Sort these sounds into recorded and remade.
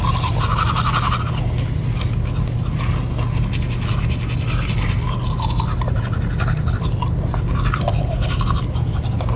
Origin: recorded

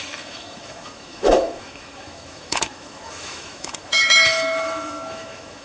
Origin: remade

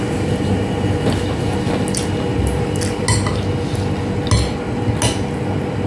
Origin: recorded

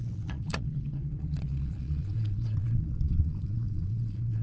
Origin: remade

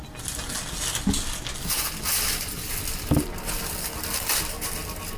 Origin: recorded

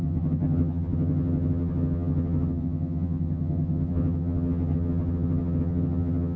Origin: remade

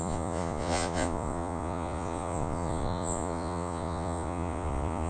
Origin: remade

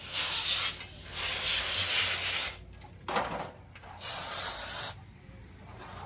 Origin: recorded